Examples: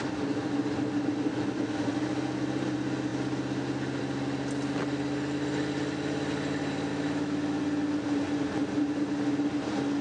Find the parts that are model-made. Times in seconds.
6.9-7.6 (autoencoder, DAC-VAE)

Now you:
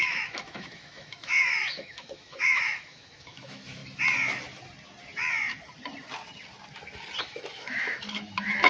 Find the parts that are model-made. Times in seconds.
0.0-3.8 (autoencoder, DAC-VAE); 7.2-8.7